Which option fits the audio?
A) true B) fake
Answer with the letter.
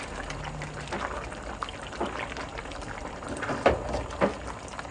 A